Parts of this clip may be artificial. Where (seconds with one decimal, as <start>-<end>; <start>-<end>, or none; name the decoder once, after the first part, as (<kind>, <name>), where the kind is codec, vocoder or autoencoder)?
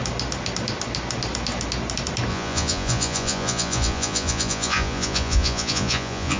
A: 2.3-6.4 (vocoder, Vocos)